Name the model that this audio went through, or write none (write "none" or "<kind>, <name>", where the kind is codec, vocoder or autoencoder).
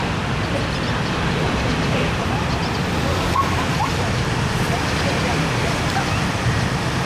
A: vocoder, BigVGAN v2